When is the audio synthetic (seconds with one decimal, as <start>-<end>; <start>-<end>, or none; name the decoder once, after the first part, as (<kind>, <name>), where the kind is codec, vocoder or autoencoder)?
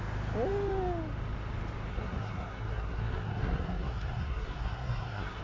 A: 1.9-5.4 (codec, SNAC)